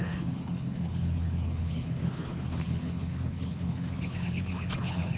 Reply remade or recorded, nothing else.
remade